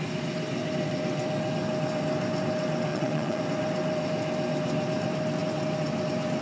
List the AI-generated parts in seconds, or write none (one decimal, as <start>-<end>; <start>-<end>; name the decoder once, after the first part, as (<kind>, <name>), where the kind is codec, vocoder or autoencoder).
2.9-3.4 (vocoder, Vocos)